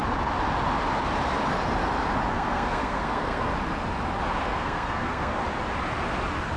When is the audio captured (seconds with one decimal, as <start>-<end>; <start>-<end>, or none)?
0.0-2.3; 3.5-4.4; 5.4-6.6